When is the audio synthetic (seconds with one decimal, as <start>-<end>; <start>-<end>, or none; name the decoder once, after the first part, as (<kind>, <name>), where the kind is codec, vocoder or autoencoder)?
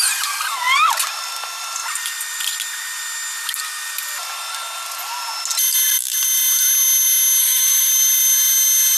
7.4-7.9 (autoencoder, DAC-VAE)